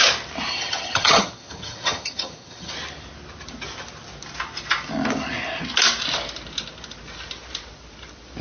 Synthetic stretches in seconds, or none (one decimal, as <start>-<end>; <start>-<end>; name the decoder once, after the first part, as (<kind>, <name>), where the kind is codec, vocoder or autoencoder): 0.5-2.7 (vocoder, HiFi-GAN)